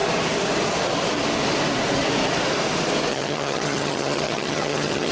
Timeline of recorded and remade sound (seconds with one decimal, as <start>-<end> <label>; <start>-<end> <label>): 0.0-3.1 recorded; 3.1-5.1 remade